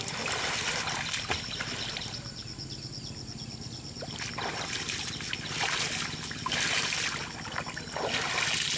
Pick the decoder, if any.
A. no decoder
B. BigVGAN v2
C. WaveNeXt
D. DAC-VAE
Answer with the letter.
A